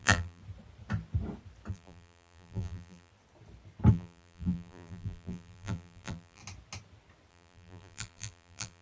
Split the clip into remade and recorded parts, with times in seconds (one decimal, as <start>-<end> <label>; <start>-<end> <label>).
0.0-0.4 remade; 0.4-1.7 recorded; 1.7-3.1 remade; 3.1-3.9 recorded; 3.9-6.4 remade; 6.4-7.3 recorded; 7.3-8.8 remade